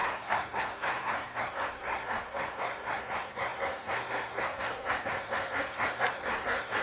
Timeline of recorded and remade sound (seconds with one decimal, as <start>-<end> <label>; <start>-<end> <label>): 0.0-6.8 remade